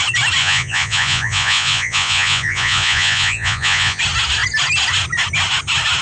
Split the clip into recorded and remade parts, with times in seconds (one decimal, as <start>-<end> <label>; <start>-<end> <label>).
0.0-0.4 recorded; 0.4-4.0 remade; 4.0-6.0 recorded